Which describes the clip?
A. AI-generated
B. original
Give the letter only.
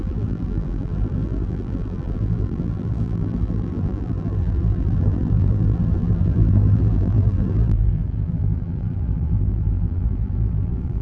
A